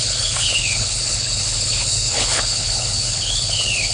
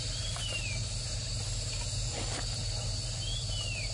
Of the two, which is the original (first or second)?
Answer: second